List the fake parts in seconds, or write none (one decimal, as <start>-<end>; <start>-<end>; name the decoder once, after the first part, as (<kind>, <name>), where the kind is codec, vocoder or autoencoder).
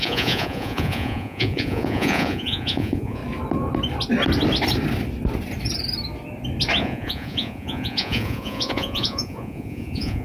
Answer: 0.0-3.2 (vocoder, Vocos); 6.8-10.2